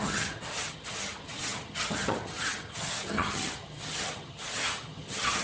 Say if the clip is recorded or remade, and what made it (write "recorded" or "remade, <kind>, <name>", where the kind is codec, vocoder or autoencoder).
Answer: remade, vocoder, HiFi-GAN